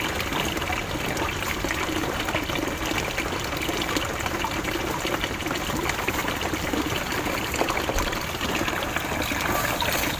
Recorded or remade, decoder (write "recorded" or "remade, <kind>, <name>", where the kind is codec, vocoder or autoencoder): recorded